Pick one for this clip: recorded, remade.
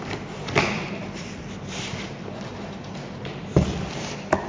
remade